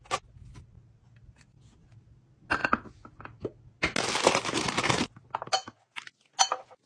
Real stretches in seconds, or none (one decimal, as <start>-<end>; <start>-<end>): 0.0-6.9